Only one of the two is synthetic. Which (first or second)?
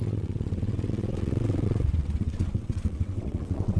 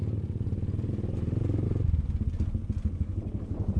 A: first